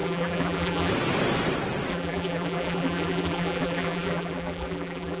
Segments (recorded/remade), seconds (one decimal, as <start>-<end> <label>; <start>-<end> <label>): 0.0-0.9 remade; 0.9-1.9 recorded; 1.9-5.2 remade